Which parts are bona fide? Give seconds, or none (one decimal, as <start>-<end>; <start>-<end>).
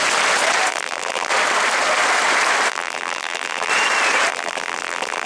0.0-0.7; 1.3-2.7; 3.7-4.3